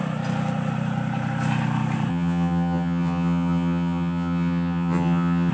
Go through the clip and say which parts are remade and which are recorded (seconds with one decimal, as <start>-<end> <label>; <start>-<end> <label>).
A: 0.0-2.1 recorded; 2.1-5.5 remade